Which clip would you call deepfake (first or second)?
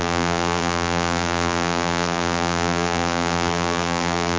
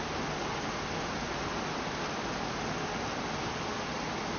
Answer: first